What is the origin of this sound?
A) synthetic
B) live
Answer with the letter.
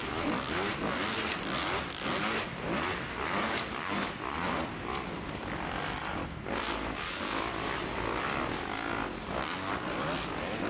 B